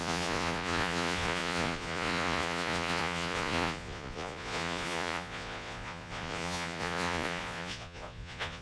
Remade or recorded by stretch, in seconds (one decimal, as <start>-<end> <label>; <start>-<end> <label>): 0.0-8.6 remade